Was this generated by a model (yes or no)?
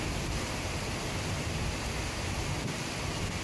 no